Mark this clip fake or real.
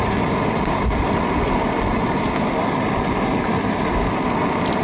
real